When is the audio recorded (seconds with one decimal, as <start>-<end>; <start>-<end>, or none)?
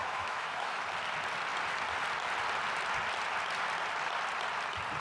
0.8-5.0